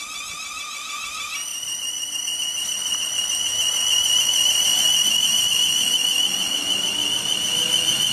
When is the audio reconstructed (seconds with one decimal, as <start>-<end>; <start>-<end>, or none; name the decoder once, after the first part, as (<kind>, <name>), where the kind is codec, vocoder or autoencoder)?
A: none